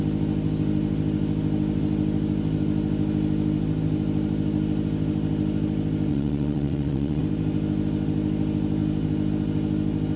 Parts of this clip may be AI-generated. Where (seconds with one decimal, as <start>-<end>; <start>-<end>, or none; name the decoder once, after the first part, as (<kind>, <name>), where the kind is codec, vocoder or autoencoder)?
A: 6.1-7.2 (vocoder, WaveNeXt)